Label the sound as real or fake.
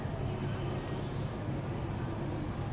real